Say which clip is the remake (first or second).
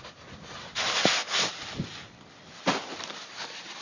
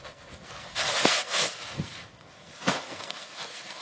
second